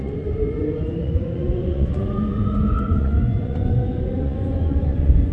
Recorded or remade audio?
remade